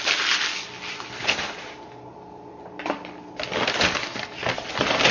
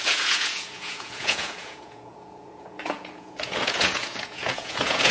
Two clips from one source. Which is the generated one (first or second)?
second